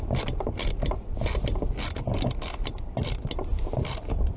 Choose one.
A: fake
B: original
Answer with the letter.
B